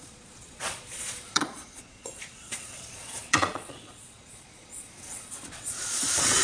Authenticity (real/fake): fake